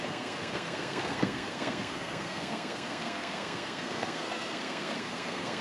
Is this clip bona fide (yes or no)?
no